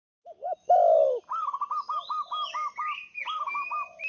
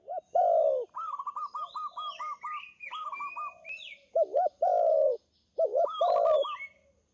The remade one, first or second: second